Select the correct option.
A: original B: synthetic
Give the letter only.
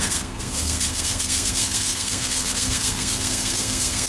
B